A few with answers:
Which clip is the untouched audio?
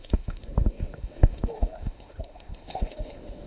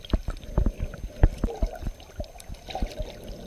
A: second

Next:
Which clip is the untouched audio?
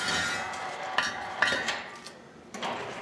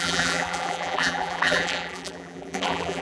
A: first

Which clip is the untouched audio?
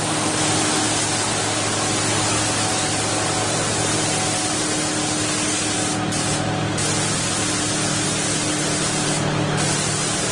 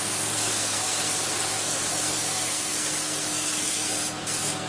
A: first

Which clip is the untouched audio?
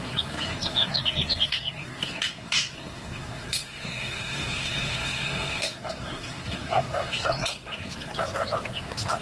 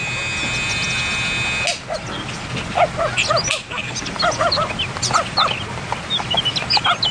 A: second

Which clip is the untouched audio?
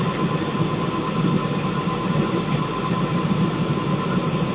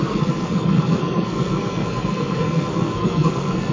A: first